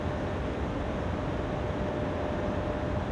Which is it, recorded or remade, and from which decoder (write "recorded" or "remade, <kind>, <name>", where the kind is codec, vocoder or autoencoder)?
recorded